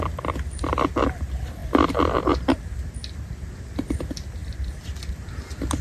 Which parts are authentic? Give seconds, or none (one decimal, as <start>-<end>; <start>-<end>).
0.0-5.8